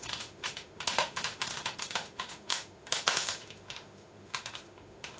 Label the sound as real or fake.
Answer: fake